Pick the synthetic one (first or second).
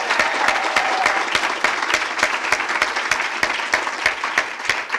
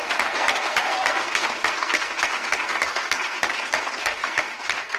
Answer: second